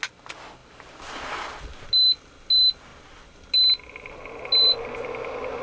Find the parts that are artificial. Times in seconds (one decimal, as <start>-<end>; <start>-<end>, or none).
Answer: none